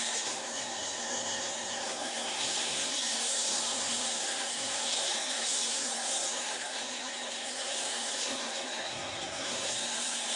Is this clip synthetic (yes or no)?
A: yes